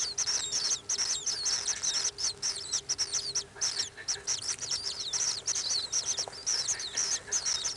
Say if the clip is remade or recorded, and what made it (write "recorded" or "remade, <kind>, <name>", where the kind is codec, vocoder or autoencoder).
recorded